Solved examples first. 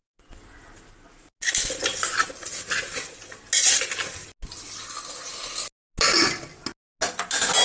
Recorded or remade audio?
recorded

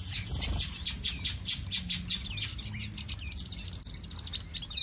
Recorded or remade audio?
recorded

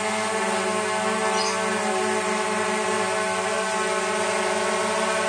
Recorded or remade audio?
recorded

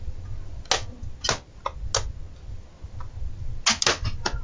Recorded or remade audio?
recorded